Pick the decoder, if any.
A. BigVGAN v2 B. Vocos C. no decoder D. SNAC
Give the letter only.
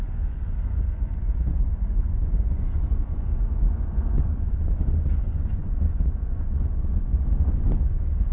B